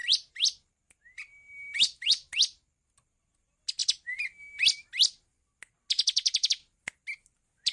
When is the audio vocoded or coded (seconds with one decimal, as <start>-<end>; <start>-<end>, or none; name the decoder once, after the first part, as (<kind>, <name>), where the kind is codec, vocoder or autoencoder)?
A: none